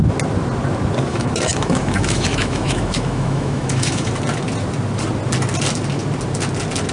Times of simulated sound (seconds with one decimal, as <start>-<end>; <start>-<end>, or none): 1.1-4.1